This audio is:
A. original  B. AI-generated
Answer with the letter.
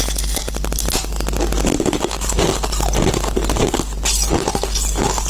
A